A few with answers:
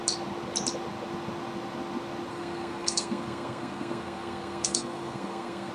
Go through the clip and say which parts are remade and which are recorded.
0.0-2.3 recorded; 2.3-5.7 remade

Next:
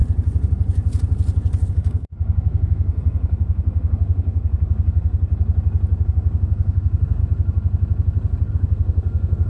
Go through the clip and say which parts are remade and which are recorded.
0.0-1.7 recorded; 1.7-5.3 remade; 5.3-6.0 recorded; 6.0-7.2 remade; 7.2-8.5 recorded; 8.5-9.5 remade

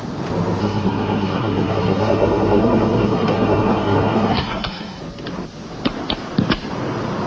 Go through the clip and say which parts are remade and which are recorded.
0.0-0.6 recorded; 0.6-5.0 remade; 5.0-7.3 recorded

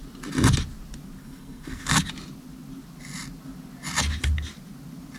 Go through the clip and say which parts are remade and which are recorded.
0.0-1.2 recorded; 1.2-2.0 remade; 2.0-5.2 recorded

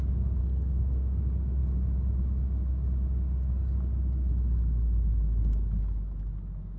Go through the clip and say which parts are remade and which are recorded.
0.0-0.4 recorded; 0.4-1.2 remade; 1.2-6.8 recorded

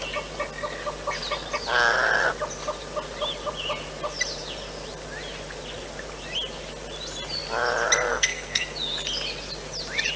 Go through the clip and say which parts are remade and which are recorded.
0.0-8.1 recorded; 8.1-8.6 remade; 8.6-10.2 recorded